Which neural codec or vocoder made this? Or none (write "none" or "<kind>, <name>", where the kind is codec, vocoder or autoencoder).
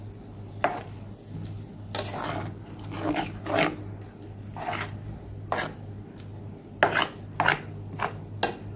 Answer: none